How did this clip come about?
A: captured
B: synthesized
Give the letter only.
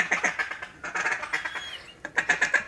A